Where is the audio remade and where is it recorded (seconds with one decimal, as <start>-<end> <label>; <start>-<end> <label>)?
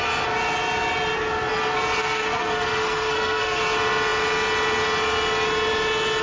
0.0-2.0 recorded; 2.0-3.6 remade; 3.6-6.2 recorded